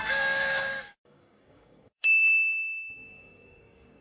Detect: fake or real fake